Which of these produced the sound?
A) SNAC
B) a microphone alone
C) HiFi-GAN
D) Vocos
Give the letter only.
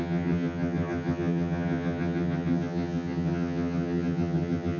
C